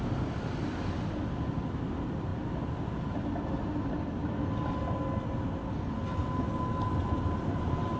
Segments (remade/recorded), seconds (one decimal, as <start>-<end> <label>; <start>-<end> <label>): 0.0-8.0 recorded